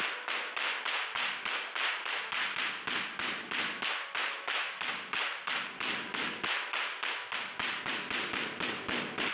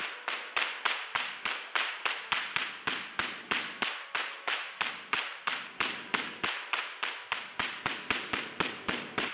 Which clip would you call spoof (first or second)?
second